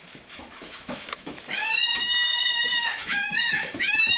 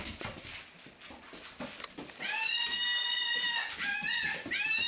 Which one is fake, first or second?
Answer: first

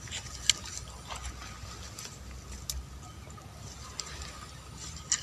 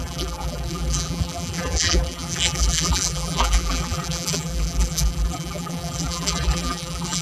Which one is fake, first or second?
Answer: second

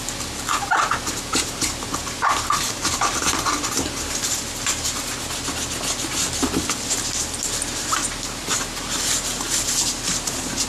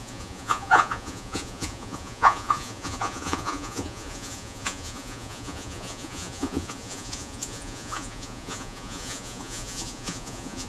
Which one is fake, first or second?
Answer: second